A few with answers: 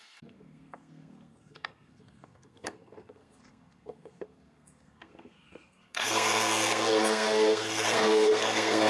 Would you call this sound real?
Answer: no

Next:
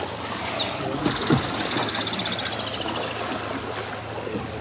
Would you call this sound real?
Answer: yes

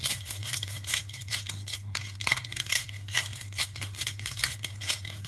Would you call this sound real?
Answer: no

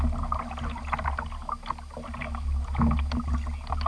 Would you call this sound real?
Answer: yes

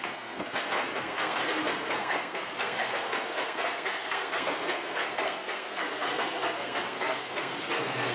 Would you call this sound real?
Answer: no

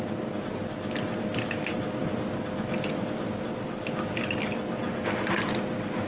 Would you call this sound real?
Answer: yes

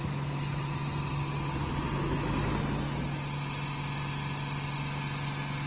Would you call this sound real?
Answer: yes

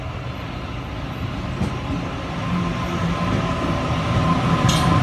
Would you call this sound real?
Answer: yes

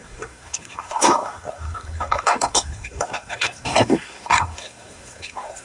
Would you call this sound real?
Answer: no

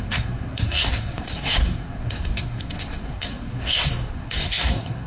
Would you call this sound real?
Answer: no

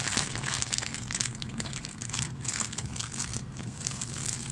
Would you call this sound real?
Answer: no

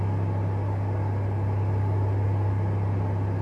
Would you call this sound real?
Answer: yes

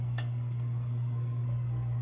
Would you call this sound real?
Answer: no